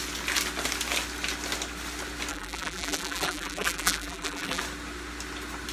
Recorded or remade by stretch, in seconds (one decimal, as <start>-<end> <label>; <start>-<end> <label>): 0.0-2.3 recorded; 2.3-4.6 remade; 4.6-5.7 recorded